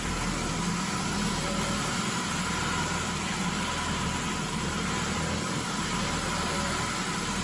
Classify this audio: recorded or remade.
remade